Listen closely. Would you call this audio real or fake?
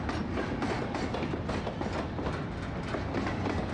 real